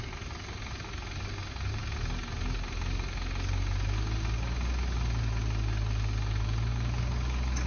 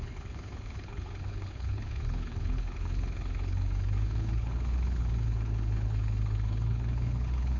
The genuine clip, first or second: first